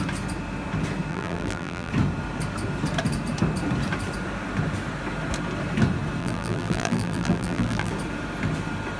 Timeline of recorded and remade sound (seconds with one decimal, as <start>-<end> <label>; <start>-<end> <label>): 0.0-1.1 recorded; 1.1-1.9 remade; 1.9-6.2 recorded; 6.2-7.9 remade; 7.9-9.0 recorded